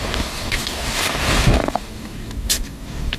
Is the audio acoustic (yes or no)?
no